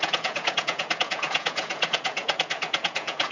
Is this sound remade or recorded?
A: remade